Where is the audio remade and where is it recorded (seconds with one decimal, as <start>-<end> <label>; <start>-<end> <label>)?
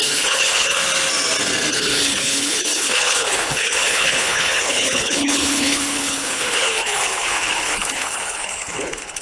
0.0-0.8 remade; 0.8-1.7 recorded; 1.7-9.2 remade